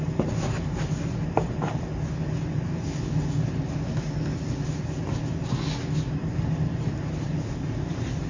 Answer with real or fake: real